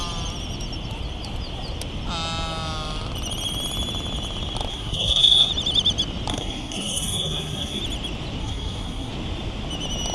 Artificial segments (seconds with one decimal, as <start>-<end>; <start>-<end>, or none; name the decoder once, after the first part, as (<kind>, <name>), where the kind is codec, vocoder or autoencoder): 4.7-5.5 (codec, SNAC); 6.3-7.8; 8.4-9.1